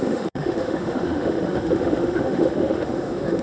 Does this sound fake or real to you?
fake